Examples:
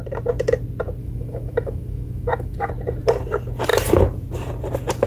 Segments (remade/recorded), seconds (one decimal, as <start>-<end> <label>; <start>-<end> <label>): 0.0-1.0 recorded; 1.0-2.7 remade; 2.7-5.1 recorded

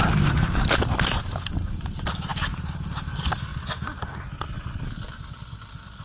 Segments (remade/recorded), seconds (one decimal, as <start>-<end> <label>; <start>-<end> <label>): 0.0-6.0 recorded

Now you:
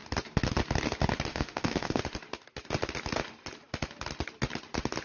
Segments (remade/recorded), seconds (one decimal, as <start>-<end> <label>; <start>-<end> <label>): 0.0-1.3 recorded; 1.3-2.0 remade; 2.0-5.0 recorded